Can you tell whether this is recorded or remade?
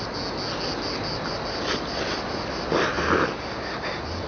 recorded